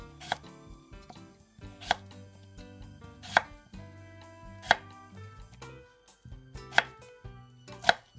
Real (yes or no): yes